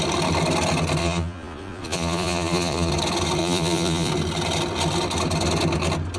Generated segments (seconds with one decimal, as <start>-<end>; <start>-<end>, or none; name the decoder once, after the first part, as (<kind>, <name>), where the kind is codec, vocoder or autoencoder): 1.0-2.9 (vocoder, Vocos); 3.4-4.1